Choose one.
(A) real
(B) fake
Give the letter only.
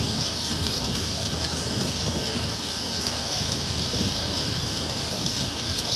B